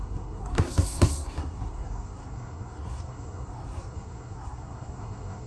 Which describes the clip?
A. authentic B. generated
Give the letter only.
B